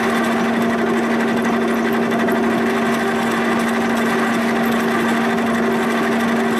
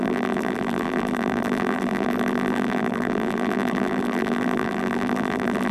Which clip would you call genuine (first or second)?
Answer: first